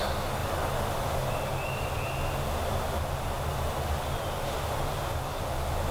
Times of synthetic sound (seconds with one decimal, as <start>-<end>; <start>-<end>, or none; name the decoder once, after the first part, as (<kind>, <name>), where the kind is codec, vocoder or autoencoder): none